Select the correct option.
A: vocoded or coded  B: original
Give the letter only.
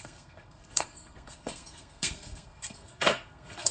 A